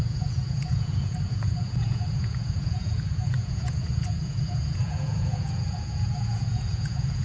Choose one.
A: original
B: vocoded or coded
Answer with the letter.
B